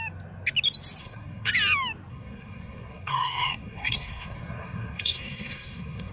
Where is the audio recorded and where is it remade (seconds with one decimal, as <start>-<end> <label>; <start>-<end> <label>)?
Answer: 0.0-1.0 recorded; 1.0-1.5 remade; 1.5-2.1 recorded; 2.1-6.1 remade